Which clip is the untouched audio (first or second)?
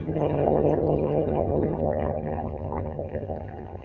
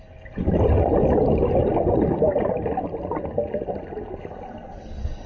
second